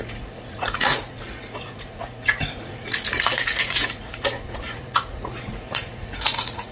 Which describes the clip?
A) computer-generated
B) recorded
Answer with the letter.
A